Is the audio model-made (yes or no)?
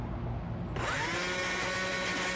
no